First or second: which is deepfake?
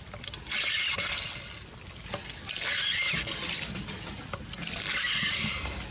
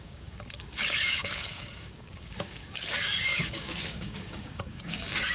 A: second